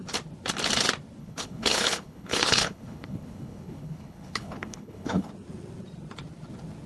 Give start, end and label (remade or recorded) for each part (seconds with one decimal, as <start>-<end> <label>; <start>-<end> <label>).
0.0-1.2 recorded; 1.2-5.3 remade; 5.3-6.9 recorded

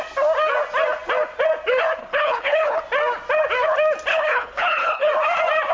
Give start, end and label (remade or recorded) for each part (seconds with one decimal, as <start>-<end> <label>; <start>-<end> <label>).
0.0-2.0 recorded; 2.0-2.8 remade; 2.8-4.1 recorded; 4.1-5.1 remade; 5.1-5.7 recorded

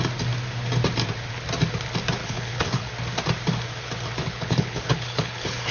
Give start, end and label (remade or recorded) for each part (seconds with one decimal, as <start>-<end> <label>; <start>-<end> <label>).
0.0-2.2 recorded; 2.2-2.9 remade; 2.9-4.2 recorded; 4.2-5.7 remade

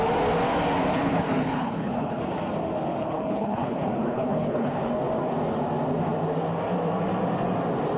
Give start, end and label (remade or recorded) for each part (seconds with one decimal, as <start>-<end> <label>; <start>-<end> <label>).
0.0-0.9 recorded; 0.9-2.2 remade; 2.2-3.0 recorded; 3.0-4.8 remade; 4.8-8.0 recorded

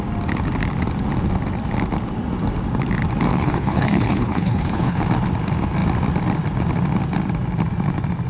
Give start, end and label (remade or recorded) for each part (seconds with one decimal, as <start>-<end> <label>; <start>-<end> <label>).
0.0-3.3 recorded; 3.3-5.0 remade; 5.0-8.3 recorded

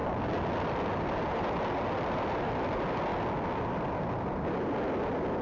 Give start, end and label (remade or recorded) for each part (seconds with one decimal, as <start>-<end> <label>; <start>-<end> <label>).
0.0-5.4 recorded

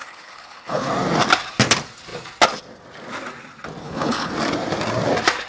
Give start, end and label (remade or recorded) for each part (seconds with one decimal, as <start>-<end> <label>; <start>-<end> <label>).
0.0-0.9 remade; 0.9-3.8 recorded; 3.8-4.3 remade; 4.3-5.5 recorded

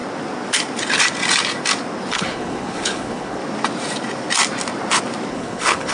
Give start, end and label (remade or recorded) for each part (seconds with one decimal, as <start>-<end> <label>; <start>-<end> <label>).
0.0-2.1 recorded; 2.1-3.4 remade; 3.4-5.3 recorded; 5.3-5.9 remade